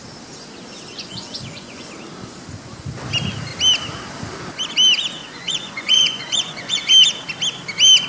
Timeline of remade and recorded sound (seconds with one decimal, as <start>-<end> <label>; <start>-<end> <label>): 0.0-0.9 recorded; 0.9-1.9 remade; 1.9-5.2 recorded; 5.2-6.9 remade; 6.9-8.1 recorded